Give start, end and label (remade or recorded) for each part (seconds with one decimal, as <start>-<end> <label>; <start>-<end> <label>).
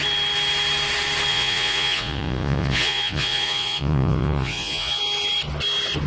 0.0-1.3 recorded; 1.3-5.0 remade; 5.0-6.1 recorded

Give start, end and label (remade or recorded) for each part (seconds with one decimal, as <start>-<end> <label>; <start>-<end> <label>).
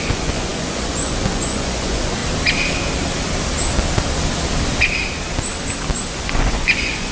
0.0-2.2 remade; 2.2-6.1 recorded; 6.1-7.1 remade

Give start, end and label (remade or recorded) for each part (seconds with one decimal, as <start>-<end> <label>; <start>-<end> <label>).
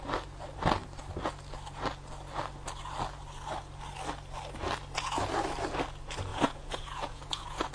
0.0-6.3 recorded; 6.3-7.7 remade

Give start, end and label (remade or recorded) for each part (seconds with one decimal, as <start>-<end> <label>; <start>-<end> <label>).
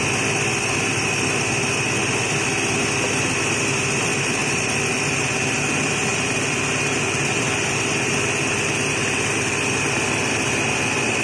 0.0-4.4 recorded; 4.4-7.8 remade; 7.8-11.2 recorded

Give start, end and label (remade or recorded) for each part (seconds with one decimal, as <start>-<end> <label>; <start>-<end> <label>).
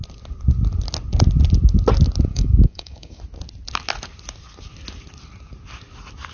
0.0-2.3 recorded; 2.3-3.2 remade; 3.2-6.3 recorded